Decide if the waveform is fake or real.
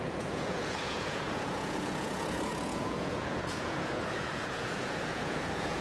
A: fake